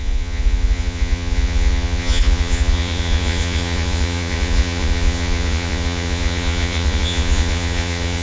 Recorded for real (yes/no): no